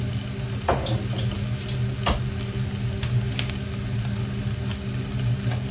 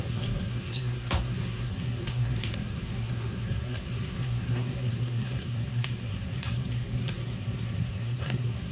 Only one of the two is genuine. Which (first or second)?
first